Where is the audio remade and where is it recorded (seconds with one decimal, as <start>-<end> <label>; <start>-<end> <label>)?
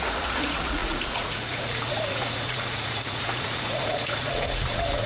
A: 0.0-5.1 remade